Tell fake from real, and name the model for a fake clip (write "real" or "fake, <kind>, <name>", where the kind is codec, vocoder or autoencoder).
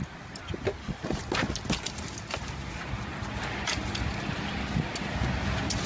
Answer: real